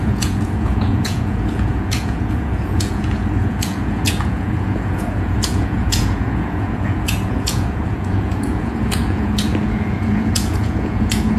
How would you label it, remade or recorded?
remade